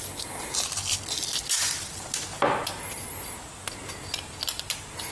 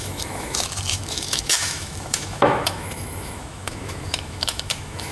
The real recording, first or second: first